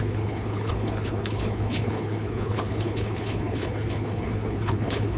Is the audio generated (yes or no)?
yes